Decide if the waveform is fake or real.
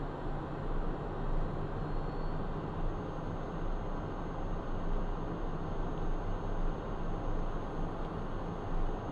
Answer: real